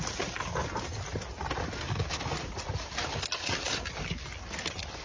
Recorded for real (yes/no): yes